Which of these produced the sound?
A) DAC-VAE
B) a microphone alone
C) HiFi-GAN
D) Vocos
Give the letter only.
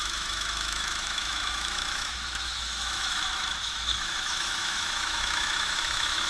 A